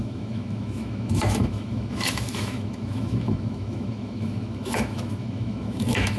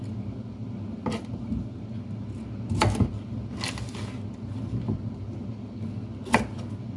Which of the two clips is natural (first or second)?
second